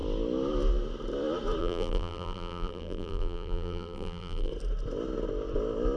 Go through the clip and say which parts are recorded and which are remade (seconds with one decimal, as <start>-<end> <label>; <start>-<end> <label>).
0.0-1.6 recorded; 1.6-4.5 remade; 4.5-6.0 recorded